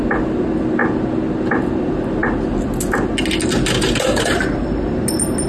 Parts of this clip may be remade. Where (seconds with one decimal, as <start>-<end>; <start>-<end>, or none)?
none